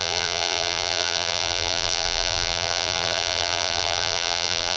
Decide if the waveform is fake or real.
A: fake